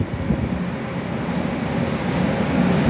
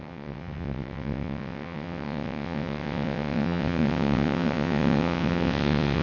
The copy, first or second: second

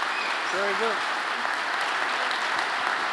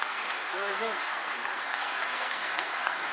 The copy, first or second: second